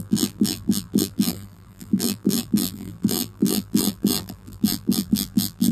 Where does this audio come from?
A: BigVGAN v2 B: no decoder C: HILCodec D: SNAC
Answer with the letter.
A